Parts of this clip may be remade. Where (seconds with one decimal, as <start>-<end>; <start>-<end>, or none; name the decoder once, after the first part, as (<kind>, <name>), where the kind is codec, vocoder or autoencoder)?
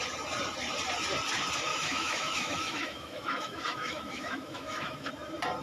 1.7-5.1 (autoencoder, DAC-VAE)